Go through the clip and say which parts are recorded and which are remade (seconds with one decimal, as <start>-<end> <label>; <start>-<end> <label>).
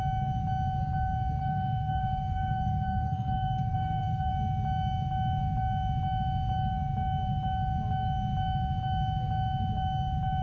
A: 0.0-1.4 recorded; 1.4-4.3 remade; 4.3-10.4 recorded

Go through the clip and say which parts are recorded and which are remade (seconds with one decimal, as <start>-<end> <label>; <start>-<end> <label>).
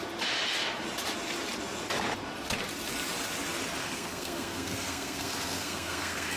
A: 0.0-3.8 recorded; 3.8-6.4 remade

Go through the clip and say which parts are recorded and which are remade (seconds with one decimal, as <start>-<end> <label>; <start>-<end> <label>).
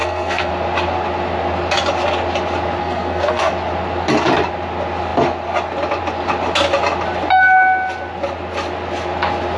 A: 0.0-0.5 remade; 0.5-2.8 recorded; 2.8-3.5 remade; 3.5-9.6 recorded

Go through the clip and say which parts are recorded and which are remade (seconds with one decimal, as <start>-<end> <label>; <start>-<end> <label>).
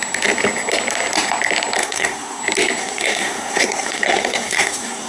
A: 0.0-1.8 recorded; 1.8-2.4 remade; 2.4-2.8 recorded; 2.8-5.1 remade